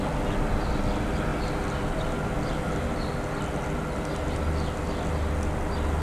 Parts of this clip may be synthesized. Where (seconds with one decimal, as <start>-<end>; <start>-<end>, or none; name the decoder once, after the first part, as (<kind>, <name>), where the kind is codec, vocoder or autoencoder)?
none